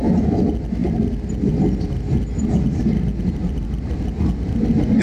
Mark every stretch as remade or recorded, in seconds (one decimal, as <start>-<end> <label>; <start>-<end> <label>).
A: 0.0-5.0 recorded